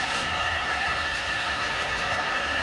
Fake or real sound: fake